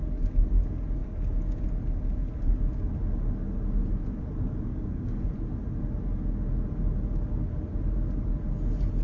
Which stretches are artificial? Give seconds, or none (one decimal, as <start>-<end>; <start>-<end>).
4.7-5.3